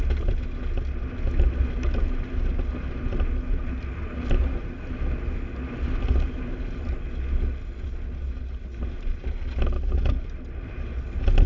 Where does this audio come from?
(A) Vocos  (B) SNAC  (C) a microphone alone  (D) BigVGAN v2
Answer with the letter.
C